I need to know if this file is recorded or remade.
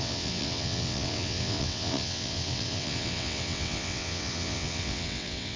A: remade